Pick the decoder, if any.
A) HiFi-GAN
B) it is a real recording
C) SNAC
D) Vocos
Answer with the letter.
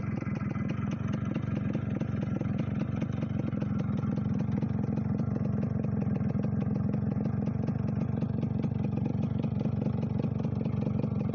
B